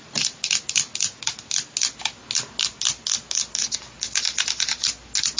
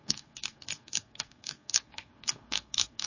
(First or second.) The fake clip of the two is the second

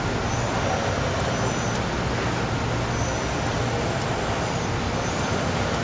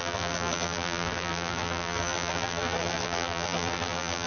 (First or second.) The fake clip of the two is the second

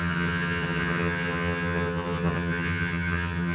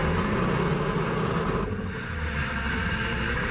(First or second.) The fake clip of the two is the first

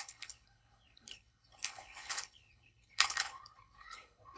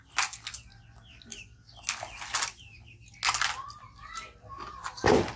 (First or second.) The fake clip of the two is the first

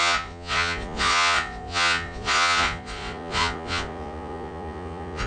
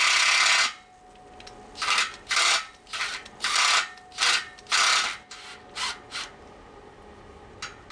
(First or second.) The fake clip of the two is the first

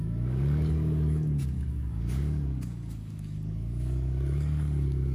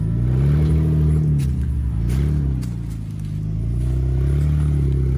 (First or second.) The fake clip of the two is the first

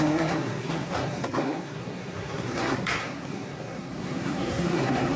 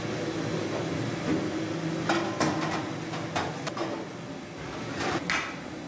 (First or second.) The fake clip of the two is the first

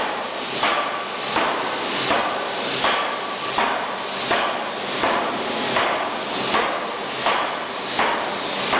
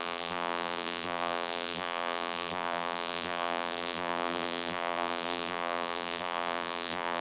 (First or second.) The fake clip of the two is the second